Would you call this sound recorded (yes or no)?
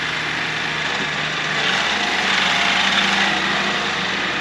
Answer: yes